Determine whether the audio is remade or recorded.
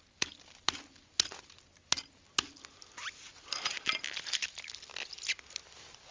recorded